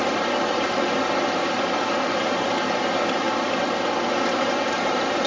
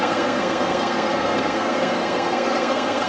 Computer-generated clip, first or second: second